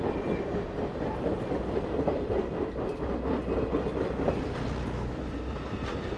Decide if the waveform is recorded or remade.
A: recorded